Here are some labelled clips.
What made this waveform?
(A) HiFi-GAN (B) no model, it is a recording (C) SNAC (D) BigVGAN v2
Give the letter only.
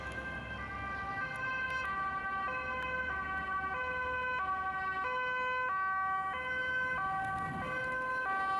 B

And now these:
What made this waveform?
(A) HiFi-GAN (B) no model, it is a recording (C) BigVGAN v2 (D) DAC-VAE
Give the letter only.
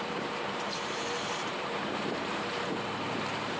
C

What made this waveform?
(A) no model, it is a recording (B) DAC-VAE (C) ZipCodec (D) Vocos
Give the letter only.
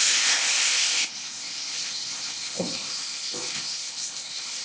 C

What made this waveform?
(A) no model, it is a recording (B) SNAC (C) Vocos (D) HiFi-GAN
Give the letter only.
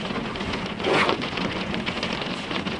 C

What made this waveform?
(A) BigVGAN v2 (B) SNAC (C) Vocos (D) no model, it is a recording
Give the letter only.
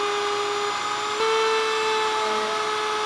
D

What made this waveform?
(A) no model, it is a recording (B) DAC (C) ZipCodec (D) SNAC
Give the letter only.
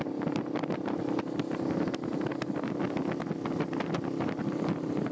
A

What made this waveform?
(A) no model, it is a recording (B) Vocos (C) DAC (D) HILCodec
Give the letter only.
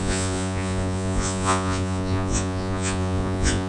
B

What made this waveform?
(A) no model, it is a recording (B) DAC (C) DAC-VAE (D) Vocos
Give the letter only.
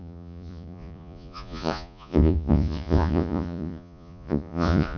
D